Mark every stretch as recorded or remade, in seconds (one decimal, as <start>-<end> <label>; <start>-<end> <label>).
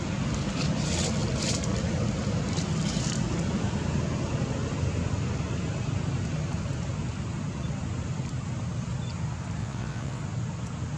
0.0-9.6 recorded; 9.6-10.2 remade; 10.2-11.0 recorded